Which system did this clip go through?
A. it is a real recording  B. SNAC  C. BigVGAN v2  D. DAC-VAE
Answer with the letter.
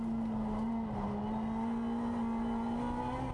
A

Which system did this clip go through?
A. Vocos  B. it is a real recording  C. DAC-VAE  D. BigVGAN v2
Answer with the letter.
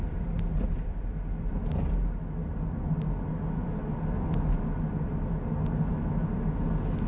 B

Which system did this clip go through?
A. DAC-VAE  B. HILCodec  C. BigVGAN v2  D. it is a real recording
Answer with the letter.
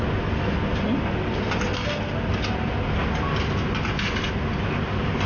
D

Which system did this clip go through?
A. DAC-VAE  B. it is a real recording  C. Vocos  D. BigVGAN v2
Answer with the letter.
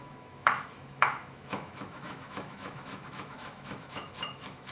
A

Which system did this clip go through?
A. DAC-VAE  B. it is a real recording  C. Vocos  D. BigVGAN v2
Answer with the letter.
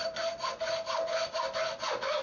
B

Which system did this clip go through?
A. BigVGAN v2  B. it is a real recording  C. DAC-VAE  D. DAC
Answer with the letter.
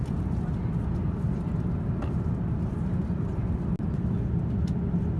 B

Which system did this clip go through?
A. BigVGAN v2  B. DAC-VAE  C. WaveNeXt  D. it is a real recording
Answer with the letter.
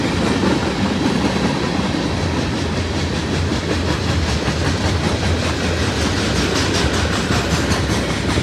D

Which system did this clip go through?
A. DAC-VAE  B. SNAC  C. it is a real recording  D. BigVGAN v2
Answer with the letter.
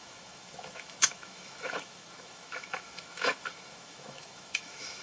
A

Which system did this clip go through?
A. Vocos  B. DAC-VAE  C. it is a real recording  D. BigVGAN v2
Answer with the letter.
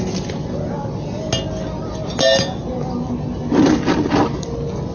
C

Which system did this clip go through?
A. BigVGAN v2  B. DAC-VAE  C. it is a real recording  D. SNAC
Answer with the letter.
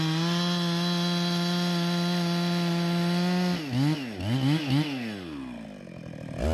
C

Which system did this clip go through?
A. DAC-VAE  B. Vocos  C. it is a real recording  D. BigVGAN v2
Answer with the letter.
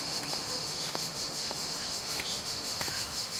A